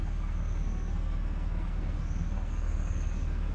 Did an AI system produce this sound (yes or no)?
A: yes